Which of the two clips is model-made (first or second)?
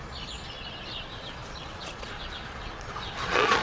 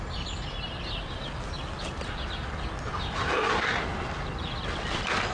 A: first